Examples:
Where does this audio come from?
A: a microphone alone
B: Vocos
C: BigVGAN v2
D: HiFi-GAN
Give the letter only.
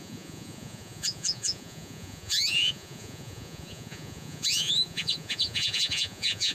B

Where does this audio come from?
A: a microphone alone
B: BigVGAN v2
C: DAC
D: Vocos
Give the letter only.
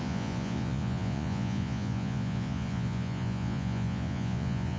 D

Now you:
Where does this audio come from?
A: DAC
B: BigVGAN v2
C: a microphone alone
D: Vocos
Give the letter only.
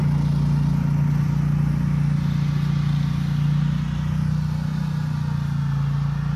C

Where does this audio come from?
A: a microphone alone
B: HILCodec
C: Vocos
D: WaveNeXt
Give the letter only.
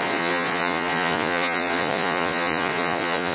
C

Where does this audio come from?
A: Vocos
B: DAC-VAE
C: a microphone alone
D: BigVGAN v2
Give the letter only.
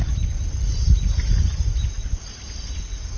C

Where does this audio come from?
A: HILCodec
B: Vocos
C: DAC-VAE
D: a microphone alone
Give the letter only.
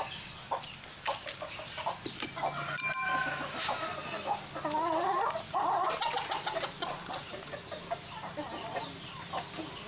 D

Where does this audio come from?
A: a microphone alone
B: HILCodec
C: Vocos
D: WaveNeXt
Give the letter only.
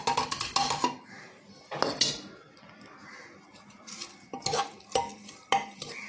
A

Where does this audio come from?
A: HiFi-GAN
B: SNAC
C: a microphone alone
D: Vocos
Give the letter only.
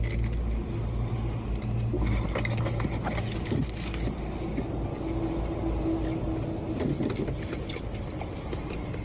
C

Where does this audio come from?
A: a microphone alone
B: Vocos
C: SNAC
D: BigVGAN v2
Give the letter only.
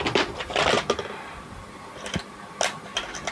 A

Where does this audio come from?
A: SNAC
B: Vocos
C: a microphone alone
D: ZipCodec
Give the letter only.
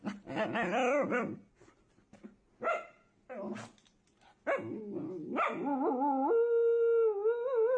C